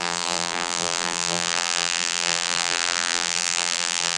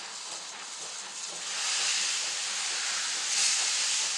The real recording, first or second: second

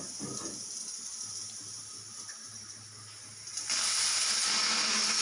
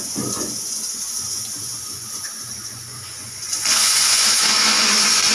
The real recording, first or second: first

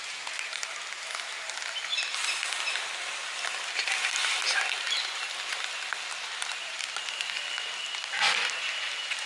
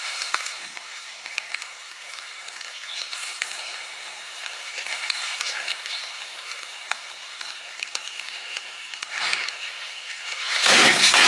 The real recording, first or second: first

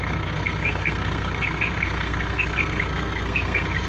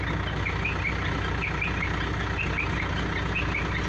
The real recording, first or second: second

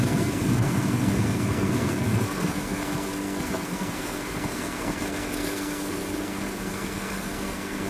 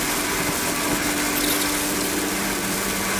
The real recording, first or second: second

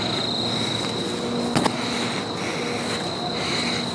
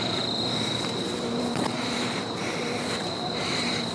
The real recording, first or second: first